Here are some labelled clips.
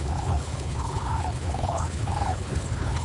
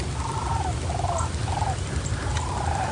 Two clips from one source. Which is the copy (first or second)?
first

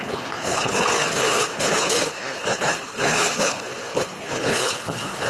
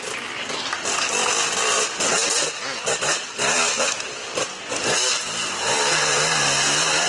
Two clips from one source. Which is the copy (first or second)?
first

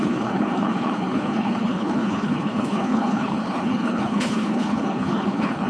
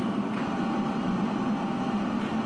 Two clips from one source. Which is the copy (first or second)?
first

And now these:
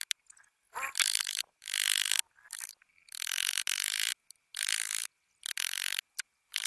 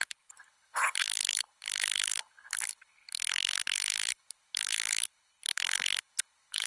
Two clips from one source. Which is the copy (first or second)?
second